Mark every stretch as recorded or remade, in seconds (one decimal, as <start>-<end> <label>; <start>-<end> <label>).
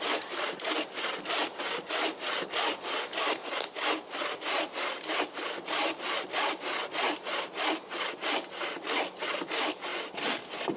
0.0-10.8 recorded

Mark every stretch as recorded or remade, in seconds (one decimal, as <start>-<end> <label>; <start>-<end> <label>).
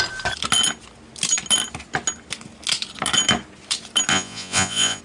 0.0-4.1 recorded; 4.1-5.0 remade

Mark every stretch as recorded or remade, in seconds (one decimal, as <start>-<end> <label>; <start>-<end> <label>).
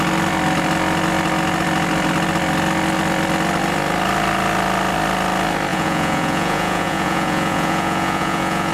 0.0-5.7 recorded; 5.7-8.7 remade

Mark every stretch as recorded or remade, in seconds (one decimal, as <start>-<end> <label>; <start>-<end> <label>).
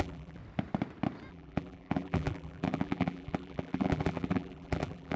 0.0-0.4 remade; 0.4-1.3 recorded; 1.3-5.2 remade